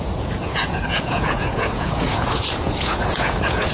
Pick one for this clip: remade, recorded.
remade